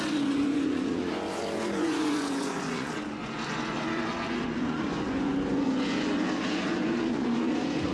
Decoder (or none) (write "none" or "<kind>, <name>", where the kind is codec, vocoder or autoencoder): vocoder, Vocos